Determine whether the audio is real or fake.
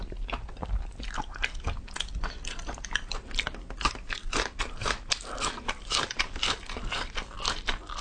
real